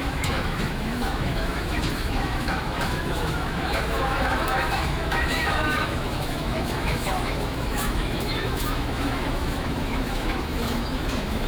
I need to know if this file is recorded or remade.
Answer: remade